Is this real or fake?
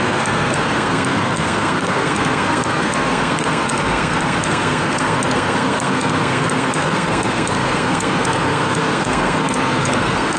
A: fake